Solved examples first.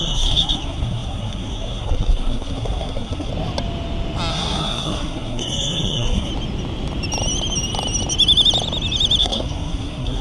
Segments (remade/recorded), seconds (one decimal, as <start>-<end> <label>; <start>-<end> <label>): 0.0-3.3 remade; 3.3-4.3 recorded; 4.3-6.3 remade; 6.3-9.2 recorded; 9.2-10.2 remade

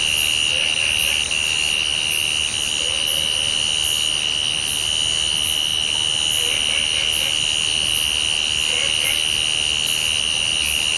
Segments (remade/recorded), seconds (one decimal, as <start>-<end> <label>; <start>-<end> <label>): 0.0-11.0 recorded

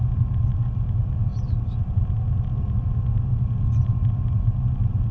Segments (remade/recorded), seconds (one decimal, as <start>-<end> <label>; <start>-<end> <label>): 0.0-5.1 recorded

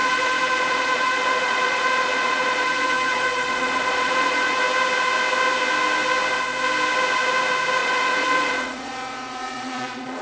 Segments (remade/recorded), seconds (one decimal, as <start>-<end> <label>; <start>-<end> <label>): 0.0-4.6 remade; 4.6-7.8 recorded; 7.8-10.2 remade